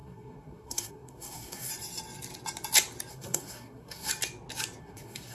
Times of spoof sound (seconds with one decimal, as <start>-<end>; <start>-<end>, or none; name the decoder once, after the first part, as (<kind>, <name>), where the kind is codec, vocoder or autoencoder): 0.0-1.7 (codec, SNAC); 3.1-4.1; 4.8-5.3